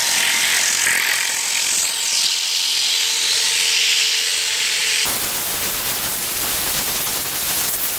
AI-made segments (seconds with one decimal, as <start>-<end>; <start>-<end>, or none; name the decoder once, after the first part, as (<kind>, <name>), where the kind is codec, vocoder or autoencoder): 4.8-7.2 (vocoder, BigVGAN v2)